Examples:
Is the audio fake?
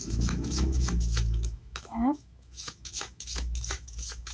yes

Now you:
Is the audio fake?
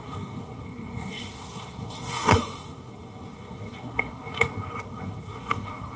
yes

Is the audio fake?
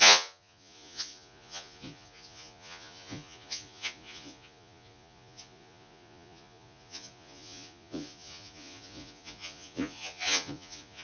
yes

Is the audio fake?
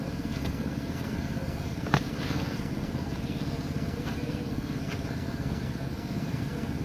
yes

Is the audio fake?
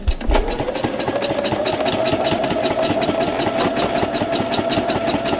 no